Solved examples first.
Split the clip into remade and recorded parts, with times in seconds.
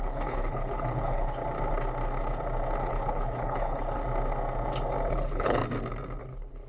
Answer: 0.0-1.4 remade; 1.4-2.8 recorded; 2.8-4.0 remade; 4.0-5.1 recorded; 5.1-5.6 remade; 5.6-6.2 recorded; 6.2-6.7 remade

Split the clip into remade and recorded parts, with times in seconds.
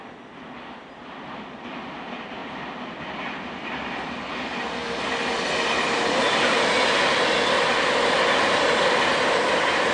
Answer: 0.0-9.9 recorded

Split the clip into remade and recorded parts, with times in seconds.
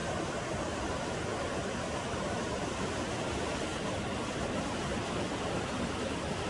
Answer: 0.0-6.5 recorded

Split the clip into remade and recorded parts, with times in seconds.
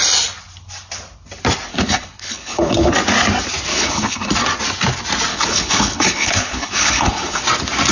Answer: 0.0-1.7 recorded; 1.7-2.9 remade; 2.9-3.7 recorded; 3.7-4.3 remade; 4.3-5.3 recorded; 5.3-7.4 remade; 7.4-7.9 recorded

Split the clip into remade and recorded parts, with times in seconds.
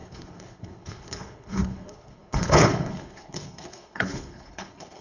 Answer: 0.0-5.0 remade